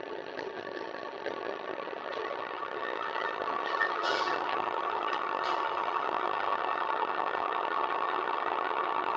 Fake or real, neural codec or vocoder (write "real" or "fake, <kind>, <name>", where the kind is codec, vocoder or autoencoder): fake, vocoder, HiFi-GAN